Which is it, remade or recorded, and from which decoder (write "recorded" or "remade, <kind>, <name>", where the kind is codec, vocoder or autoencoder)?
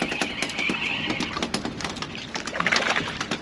recorded